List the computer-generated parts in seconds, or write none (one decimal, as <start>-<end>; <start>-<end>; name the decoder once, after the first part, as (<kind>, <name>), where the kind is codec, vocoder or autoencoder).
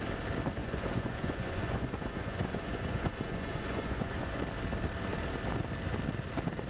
0.6-4.4 (vocoder, Vocos)